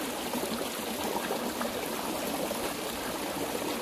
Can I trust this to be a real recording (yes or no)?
yes